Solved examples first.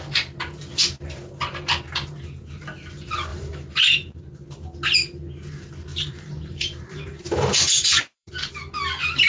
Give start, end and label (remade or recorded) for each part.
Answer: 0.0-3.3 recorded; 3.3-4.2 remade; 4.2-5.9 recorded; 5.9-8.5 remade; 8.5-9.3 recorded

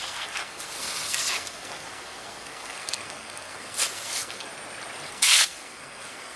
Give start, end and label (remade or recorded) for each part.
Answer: 0.0-4.5 remade; 4.5-5.1 recorded; 5.1-6.4 remade